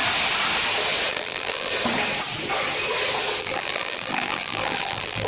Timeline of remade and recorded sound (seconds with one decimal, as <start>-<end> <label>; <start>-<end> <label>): 0.0-1.1 recorded; 1.1-1.7 remade; 1.7-3.4 recorded; 3.4-5.3 remade